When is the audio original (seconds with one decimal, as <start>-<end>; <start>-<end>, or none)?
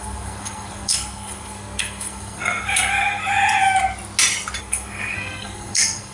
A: 3.2-4.6